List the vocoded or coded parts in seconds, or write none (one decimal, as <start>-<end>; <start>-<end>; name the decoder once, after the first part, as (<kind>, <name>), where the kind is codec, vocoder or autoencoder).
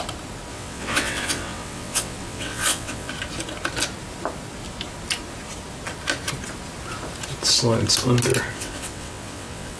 0.5-3.1 (vocoder, WaveNeXt); 8.5-9.8